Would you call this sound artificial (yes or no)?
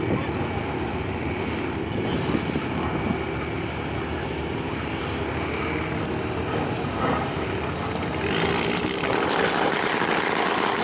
no